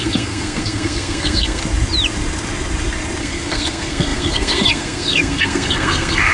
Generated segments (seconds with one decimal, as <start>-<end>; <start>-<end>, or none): 0.0-1.6; 3.2-6.3